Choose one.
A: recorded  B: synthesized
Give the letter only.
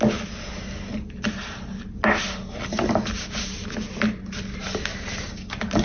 A